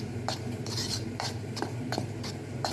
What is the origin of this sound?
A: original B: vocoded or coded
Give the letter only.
B